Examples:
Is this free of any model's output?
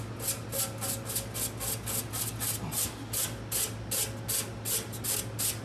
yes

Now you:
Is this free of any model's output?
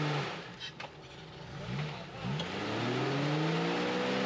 yes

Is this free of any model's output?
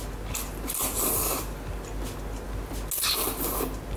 yes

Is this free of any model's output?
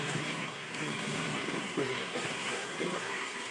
no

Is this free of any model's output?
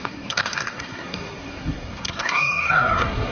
no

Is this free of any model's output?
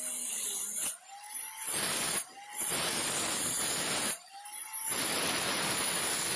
yes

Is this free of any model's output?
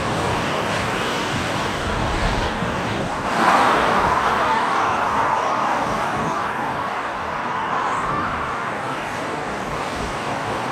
no